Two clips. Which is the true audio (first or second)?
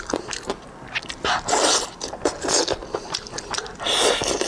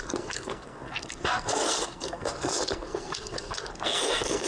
first